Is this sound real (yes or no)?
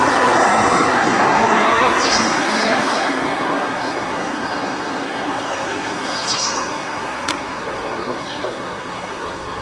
no